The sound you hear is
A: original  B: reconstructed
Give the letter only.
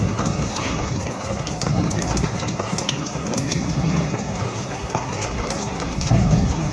B